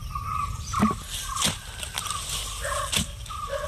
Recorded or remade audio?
recorded